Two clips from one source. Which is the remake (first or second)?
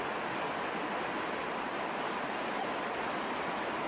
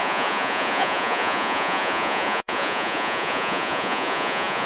second